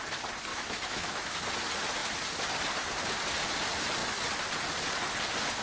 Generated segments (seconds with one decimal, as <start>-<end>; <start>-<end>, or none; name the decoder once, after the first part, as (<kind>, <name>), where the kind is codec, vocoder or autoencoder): 0.5-1.4 (autoencoder, DAC-VAE)